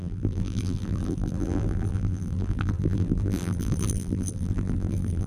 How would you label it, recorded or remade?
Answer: remade